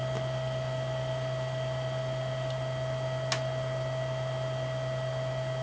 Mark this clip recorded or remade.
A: recorded